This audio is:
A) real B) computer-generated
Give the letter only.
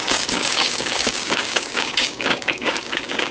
B